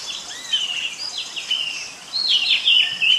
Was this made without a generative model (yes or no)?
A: yes